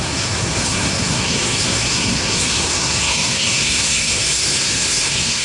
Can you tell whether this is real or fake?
fake